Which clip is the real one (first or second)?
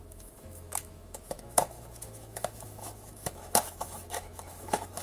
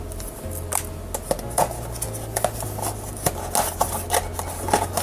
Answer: second